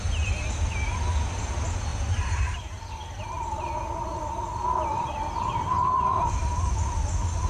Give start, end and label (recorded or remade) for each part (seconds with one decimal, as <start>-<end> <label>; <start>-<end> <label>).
0.0-1.9 recorded; 1.9-3.6 remade; 3.6-7.5 recorded